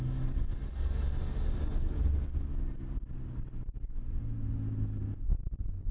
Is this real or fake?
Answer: real